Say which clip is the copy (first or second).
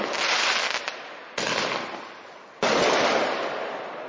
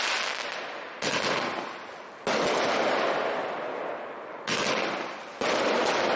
first